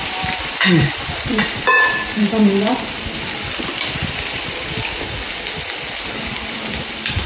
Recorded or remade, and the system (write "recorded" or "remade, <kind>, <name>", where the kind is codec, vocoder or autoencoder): remade, vocoder, BigVGAN v2